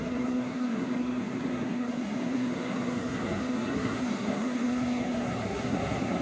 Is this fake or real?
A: fake